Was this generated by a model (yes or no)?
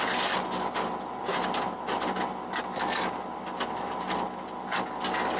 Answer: no